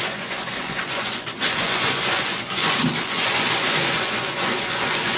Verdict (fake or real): fake